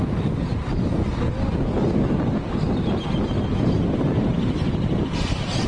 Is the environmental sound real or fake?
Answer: real